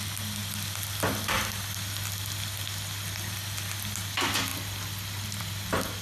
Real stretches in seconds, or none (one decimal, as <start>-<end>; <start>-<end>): 0.0-6.0